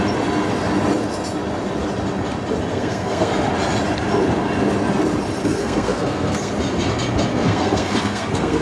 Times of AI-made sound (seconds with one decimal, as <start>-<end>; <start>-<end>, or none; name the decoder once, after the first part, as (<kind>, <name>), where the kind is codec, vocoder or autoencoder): 2.7-3.3 (codec, SNAC); 5.4-6.5; 7.3-8.6

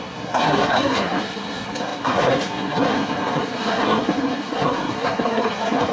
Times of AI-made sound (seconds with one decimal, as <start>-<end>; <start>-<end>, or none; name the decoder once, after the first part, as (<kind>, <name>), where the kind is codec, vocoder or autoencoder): 0.0-5.9 (codec, SNAC)

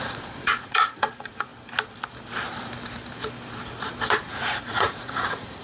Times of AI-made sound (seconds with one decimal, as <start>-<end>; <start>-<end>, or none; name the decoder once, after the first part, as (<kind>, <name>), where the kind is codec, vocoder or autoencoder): 0.0-1.5 (vocoder, Vocos); 4.3-5.6

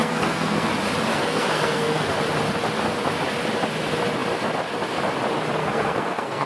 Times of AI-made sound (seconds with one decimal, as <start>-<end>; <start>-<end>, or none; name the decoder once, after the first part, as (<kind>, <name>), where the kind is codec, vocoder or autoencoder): 0.0-0.7 (codec, SNAC); 1.1-2.1; 5.6-6.5

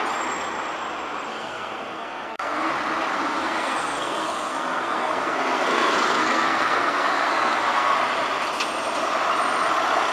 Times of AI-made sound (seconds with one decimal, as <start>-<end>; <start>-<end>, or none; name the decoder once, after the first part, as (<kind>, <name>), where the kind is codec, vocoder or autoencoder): 1.3-2.7 (codec, SNAC); 3.1-7.9

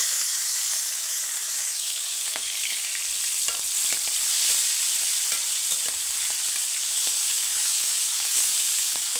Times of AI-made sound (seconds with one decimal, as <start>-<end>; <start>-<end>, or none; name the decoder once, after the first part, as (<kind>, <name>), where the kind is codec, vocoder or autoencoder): 0.0-2.9 (codec, DAC); 6.8-9.2

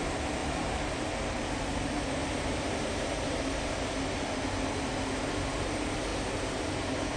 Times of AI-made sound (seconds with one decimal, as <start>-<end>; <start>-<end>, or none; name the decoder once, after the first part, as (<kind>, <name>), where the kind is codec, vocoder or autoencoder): 0.4-1.1 (vocoder, BigVGAN v2); 2.2-3.9